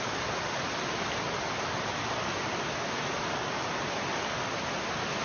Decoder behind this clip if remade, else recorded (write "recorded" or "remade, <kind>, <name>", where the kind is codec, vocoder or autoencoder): recorded